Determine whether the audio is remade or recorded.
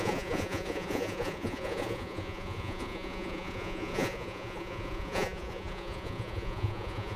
remade